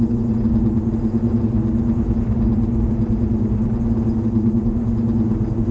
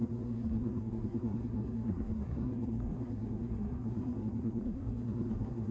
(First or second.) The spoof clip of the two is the second